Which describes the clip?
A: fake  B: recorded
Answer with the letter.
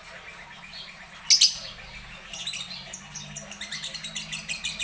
B